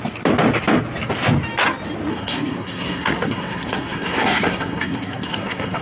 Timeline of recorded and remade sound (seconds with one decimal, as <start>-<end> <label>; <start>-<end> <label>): 0.0-2.1 recorded; 2.1-5.8 remade